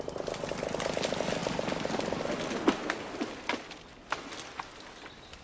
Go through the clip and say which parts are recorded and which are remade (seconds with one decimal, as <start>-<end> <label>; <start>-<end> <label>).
0.0-5.4 recorded